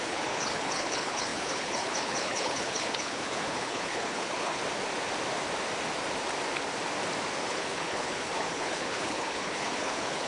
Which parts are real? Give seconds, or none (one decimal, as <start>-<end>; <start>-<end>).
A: 4.6-7.5